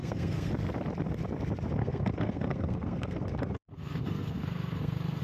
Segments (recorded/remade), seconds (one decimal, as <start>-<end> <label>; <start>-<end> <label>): 0.0-0.5 remade; 0.5-1.8 recorded; 1.8-5.2 remade